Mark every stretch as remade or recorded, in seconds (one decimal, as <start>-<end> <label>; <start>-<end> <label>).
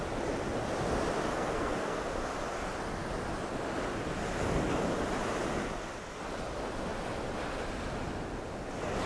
0.0-1.3 recorded; 1.3-2.0 remade; 2.0-9.1 recorded